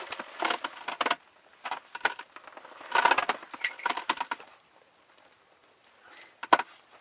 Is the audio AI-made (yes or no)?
yes